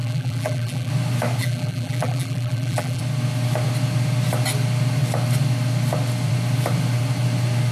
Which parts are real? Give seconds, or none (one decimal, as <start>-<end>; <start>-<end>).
0.9-1.4; 3.0-7.7